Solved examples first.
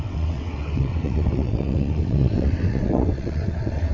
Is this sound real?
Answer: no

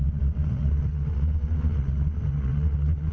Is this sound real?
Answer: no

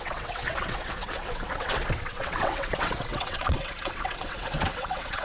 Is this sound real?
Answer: no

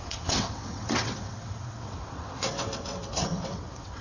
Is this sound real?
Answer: no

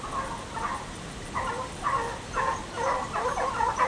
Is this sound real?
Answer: yes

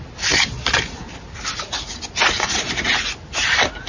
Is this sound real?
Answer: yes